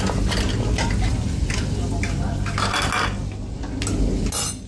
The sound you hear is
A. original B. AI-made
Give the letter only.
A